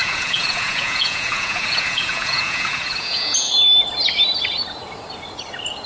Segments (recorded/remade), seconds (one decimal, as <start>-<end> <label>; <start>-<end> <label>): 0.0-3.5 remade; 3.5-5.9 recorded